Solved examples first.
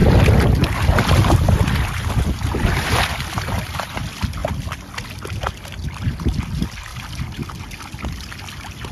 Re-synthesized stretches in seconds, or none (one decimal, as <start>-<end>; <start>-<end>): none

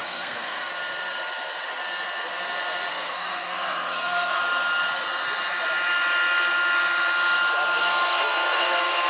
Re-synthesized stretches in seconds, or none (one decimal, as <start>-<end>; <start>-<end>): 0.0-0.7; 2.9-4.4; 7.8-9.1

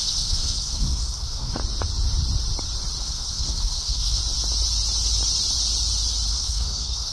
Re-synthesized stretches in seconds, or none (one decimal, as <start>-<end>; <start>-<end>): 0.0-1.6; 3.0-4.2; 6.3-7.1

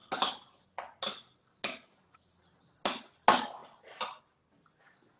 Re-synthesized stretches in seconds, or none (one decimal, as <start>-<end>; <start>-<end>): none

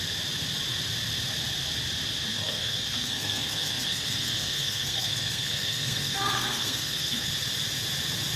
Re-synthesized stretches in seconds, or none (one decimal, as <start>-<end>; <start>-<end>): 2.3-7.3